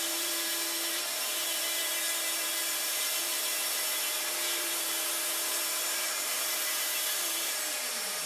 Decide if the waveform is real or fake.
fake